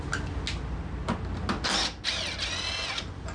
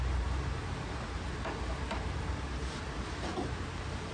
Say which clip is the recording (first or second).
first